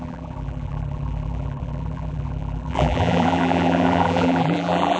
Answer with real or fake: fake